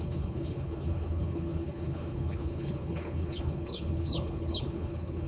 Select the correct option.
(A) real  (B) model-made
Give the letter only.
B